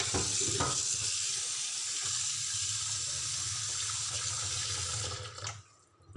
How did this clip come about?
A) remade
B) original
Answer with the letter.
B